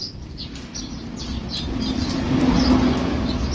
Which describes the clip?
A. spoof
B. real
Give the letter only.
B